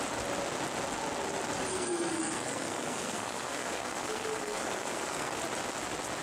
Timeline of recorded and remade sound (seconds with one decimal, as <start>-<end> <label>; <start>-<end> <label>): 0.0-1.7 recorded; 1.7-5.4 remade; 5.4-6.2 recorded